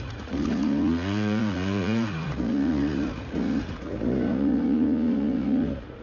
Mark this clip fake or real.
fake